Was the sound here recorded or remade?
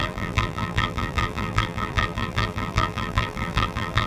remade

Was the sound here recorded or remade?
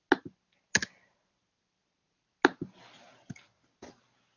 recorded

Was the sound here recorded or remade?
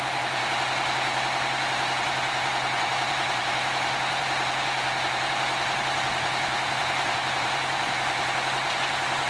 remade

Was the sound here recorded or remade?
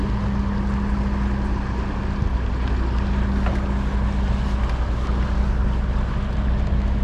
recorded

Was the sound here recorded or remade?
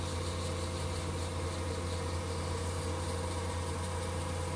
recorded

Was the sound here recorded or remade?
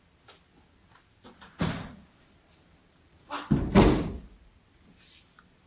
remade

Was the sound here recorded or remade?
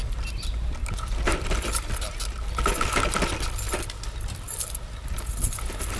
recorded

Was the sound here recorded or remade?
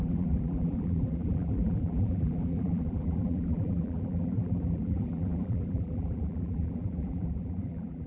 remade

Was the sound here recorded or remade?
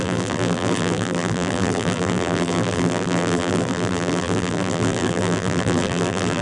remade